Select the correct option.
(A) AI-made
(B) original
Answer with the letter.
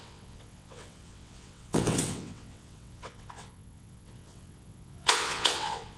A